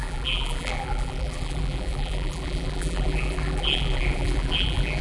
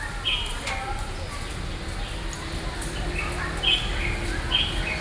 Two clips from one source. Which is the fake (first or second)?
first